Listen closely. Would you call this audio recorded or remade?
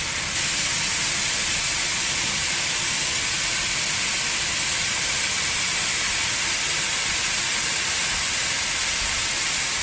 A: recorded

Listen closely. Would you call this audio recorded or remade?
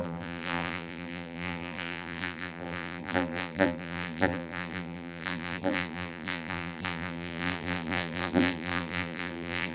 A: remade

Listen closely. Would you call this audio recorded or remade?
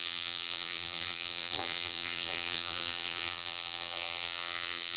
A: remade